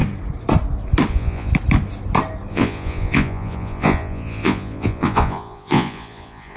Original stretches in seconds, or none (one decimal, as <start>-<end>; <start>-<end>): 0.0-1.1; 1.5-2.5